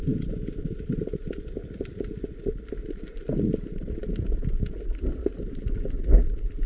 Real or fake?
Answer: real